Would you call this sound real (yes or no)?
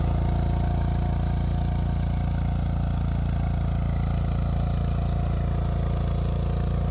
yes